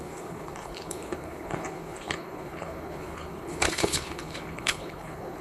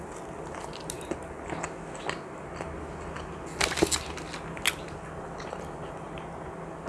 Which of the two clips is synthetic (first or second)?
first